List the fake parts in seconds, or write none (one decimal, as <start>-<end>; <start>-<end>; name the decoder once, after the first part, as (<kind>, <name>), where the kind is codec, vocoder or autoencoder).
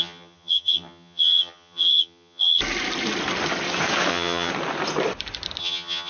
0.0-2.6 (vocoder, HiFi-GAN); 4.1-4.5; 5.6-6.1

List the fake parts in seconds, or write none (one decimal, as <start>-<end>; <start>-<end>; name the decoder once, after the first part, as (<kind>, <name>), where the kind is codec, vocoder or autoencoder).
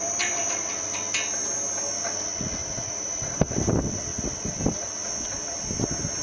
2.6-3.5 (vocoder, BigVGAN v2); 4.1-4.9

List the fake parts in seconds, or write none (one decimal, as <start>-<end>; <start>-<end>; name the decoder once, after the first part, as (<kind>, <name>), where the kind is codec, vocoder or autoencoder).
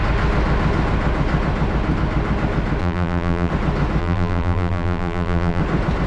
2.8-3.5 (vocoder, BigVGAN v2); 4.0-5.6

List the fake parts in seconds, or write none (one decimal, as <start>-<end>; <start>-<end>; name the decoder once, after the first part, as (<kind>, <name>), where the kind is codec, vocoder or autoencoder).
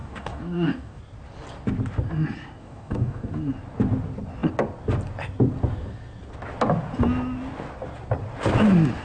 0.0-1.0 (codec, DAC); 2.6-3.3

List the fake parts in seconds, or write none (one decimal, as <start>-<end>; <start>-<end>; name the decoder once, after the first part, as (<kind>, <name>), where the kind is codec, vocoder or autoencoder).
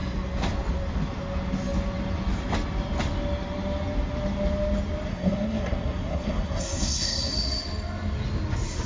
5.1-7.3 (codec, SNAC)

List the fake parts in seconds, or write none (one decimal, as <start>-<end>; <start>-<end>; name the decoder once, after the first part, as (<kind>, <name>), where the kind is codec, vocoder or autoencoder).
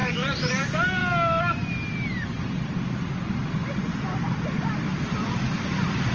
none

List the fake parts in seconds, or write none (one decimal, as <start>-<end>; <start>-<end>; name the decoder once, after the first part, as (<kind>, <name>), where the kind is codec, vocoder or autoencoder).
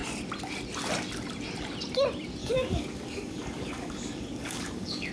2.4-5.1 (codec, DAC)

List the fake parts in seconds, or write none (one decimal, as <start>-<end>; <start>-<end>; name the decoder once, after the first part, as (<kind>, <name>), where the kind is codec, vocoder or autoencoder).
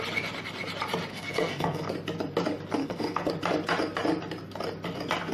1.1-1.9 (codec, SNAC); 2.8-3.3